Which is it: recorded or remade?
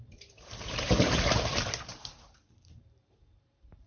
remade